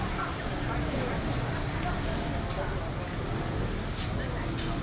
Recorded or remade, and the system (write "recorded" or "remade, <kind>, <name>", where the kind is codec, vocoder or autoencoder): recorded